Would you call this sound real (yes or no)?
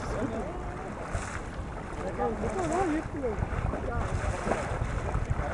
yes